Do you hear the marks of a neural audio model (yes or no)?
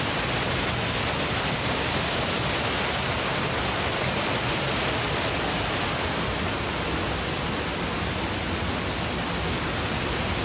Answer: no